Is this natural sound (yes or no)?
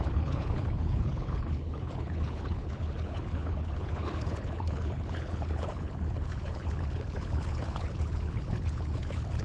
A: no